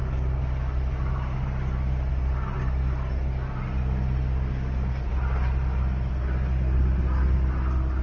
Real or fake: real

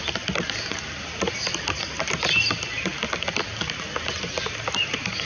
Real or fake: real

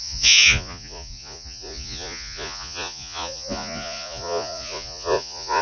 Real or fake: fake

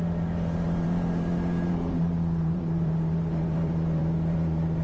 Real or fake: fake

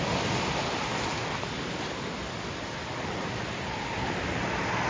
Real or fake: real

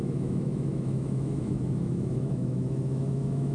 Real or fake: fake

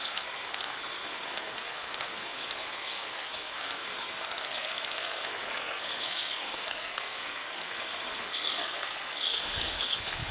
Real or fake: fake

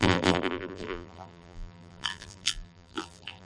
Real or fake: fake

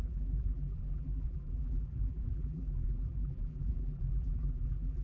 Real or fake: fake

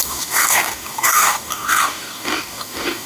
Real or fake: fake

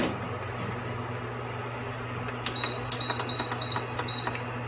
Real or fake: real